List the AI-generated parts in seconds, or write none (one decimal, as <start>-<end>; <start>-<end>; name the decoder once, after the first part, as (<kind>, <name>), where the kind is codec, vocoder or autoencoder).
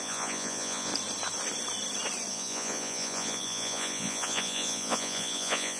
0.0-0.9 (vocoder, Vocos); 2.3-5.8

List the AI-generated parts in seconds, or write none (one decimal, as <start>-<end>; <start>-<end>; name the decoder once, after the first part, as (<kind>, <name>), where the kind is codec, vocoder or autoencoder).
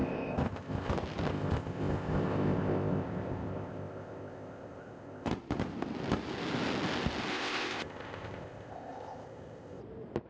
0.0-0.9 (codec, ZipCodec); 1.3-5.3; 7.3-9.8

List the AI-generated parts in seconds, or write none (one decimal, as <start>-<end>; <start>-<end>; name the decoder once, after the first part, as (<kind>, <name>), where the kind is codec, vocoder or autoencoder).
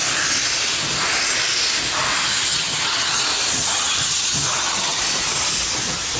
2.5-3.2 (vocoder, HiFi-GAN); 3.6-5.0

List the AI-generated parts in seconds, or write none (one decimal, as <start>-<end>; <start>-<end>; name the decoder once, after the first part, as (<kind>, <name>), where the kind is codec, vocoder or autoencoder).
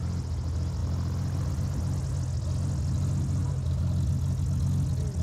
none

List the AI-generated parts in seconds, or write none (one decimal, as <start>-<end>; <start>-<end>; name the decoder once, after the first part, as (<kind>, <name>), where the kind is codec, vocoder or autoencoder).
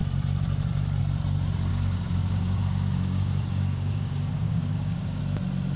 1.7-5.2 (codec, DAC)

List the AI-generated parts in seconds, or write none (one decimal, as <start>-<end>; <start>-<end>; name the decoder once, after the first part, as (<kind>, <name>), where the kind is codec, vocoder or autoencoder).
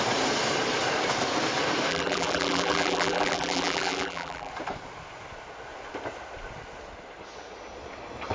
1.9-4.5 (vocoder, BigVGAN v2)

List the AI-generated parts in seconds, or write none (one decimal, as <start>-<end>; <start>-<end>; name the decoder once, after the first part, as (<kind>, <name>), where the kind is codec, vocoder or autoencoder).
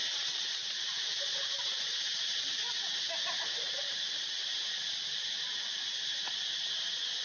0.0-3.9 (vocoder, BigVGAN v2)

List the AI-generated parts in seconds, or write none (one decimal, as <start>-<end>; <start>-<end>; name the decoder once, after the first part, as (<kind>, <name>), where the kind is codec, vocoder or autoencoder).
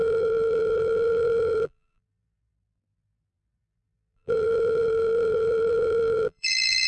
0.0-6.9 (vocoder, BigVGAN v2)